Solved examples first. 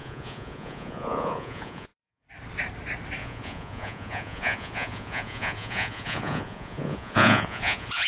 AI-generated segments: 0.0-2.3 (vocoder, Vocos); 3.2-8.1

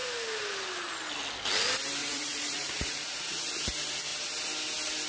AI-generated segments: 2.0-3.5 (vocoder, Vocos)

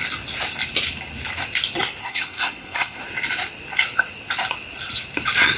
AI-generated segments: 2.0-3.0 (codec, SNAC)

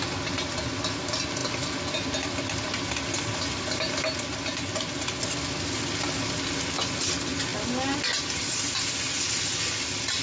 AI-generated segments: none

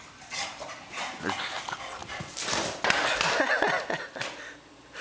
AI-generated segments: none

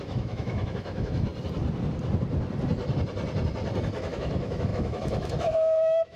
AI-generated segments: 0.0-1.3 (autoencoder, DAC-VAE); 4.0-6.2

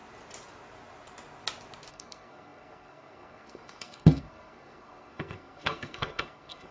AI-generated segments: 1.9-6.7 (codec, SNAC)

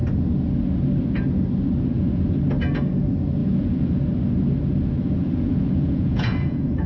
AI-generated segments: 3.4-4.0 (vocoder, Vocos); 5.2-6.9